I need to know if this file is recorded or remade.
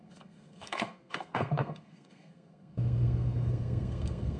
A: remade